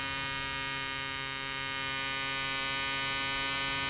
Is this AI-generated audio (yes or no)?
no